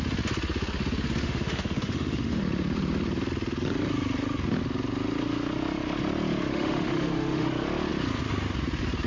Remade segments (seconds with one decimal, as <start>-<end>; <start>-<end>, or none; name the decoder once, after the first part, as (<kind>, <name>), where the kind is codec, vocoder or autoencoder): 1.2-2.4 (autoencoder, DAC-VAE); 6.5-7.5